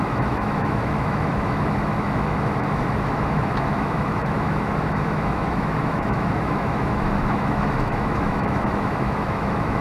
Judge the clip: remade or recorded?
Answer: remade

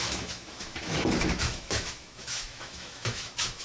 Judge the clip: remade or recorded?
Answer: remade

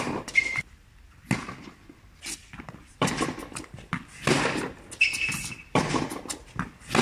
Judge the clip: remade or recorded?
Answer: recorded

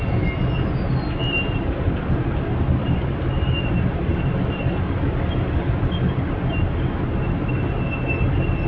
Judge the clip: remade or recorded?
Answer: recorded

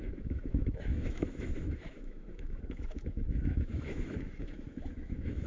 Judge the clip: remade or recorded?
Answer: remade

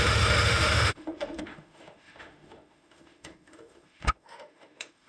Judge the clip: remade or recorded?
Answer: remade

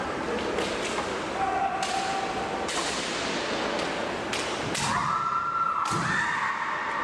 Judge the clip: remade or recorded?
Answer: recorded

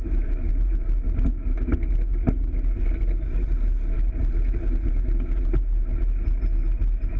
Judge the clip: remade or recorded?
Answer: recorded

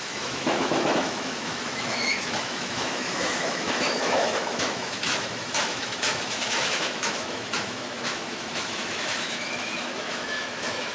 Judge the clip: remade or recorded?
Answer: remade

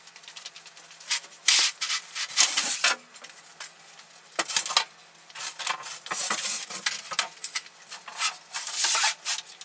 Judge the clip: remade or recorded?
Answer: recorded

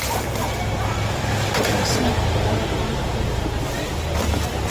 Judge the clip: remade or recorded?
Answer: recorded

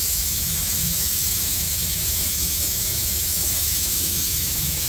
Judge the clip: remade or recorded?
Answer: remade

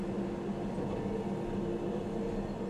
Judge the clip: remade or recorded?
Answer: recorded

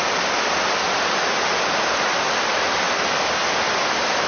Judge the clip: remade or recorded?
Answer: recorded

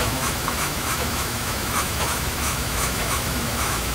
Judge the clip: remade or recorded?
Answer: remade